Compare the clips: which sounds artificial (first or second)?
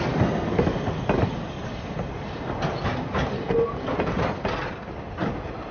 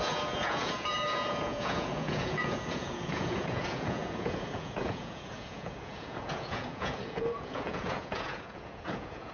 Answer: second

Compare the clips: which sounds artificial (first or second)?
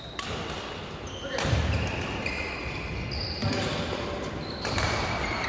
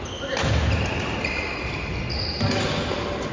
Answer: first